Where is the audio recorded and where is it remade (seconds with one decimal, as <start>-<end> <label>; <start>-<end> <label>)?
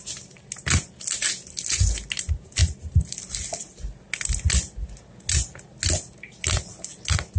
0.0-7.4 recorded